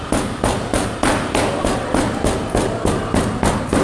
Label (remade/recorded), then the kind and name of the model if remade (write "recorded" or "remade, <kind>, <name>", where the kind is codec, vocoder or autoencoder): recorded